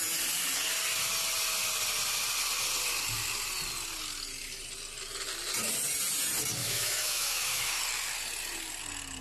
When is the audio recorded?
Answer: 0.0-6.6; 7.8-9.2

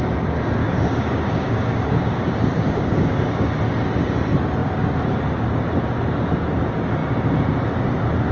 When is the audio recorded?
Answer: 0.0-0.6; 3.5-8.3

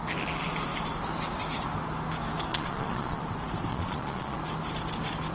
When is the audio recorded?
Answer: 0.0-2.5; 3.2-3.7; 4.4-5.3

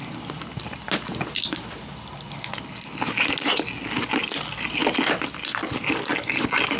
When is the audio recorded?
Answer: 0.0-6.8

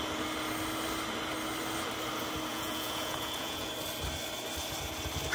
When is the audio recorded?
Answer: 0.0-2.5; 3.7-5.3

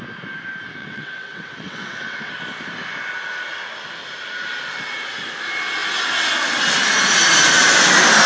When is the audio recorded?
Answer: 0.0-0.8; 2.3-8.3